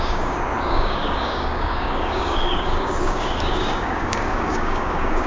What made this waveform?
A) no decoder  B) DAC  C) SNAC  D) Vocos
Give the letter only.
B